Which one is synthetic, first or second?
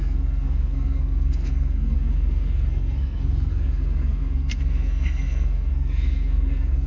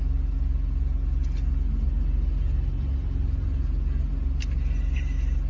first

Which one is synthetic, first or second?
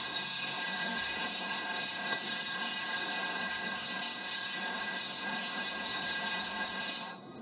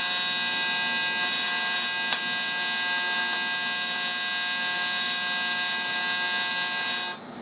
first